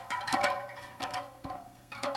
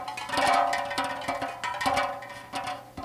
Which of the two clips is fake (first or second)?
first